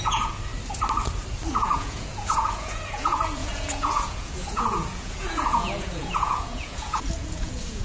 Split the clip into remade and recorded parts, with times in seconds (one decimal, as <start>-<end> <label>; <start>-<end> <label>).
0.0-0.5 remade; 0.5-1.5 recorded; 1.5-7.8 remade